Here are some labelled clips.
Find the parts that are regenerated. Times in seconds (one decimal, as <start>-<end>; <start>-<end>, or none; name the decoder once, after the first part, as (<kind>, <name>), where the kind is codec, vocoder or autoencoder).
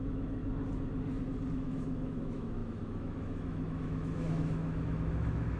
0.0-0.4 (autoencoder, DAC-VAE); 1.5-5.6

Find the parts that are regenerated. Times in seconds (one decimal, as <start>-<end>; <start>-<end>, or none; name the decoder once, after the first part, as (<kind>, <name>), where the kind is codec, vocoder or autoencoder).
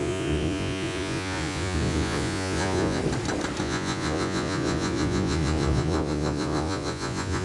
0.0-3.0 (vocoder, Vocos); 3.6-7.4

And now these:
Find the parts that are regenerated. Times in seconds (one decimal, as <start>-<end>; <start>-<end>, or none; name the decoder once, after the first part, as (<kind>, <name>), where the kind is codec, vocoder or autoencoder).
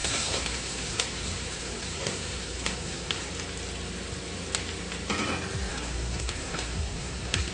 0.0-3.3 (codec, SNAC); 5.7-7.5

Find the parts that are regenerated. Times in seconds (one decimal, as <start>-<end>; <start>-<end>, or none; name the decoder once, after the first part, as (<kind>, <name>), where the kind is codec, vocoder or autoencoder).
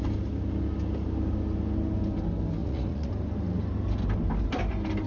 2.6-3.1 (vocoder, Vocos)